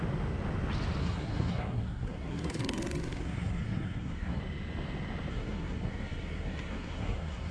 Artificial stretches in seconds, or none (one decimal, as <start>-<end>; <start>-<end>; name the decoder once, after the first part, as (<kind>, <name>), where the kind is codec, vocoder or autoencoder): 1.0-4.4 (codec, SNAC); 5.3-7.5